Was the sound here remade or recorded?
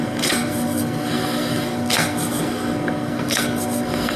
remade